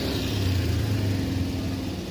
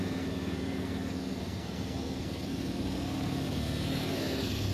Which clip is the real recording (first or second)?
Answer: first